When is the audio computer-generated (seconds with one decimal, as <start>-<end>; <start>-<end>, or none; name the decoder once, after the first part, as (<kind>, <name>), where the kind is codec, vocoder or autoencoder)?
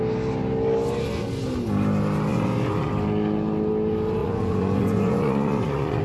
2.3-2.9 (vocoder, Vocos); 4.2-6.0